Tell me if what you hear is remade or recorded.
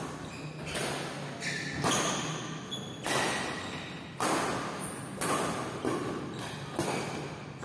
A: recorded